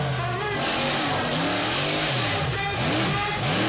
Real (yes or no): yes